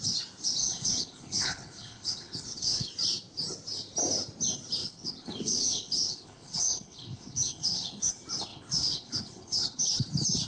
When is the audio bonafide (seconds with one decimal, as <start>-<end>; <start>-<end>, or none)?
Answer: 0.0-0.6; 2.9-4.8; 8.1-8.5; 9.8-10.5